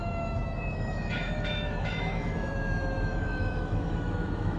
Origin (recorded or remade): remade